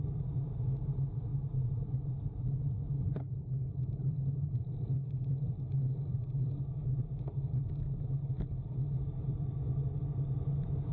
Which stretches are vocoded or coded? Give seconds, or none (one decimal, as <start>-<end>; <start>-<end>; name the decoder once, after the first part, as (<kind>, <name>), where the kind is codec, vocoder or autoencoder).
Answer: 1.3-6.6 (vocoder, BigVGAN v2)